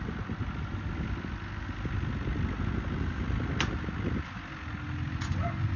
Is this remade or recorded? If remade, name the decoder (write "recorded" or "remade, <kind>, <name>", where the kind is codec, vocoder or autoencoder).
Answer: recorded